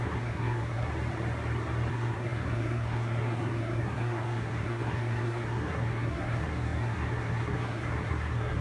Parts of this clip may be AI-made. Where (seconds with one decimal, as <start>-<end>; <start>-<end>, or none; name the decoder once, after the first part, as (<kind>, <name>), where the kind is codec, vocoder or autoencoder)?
0.0-0.9 (codec, SNAC); 1.9-8.6